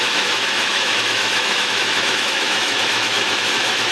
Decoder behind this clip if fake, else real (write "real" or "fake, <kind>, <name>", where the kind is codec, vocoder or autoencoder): fake, autoencoder, DAC-VAE